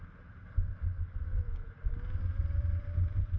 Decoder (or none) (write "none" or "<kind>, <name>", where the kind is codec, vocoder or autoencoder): none